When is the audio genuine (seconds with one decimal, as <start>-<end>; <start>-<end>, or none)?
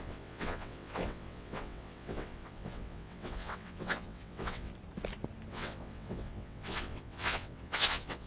4.7-5.5